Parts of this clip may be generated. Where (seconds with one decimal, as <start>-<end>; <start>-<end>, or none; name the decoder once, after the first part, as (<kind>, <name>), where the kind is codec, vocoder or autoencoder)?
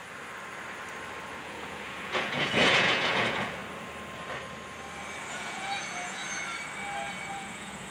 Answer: 1.4-3.6 (vocoder, Vocos); 5.3-6.2; 7.3-7.9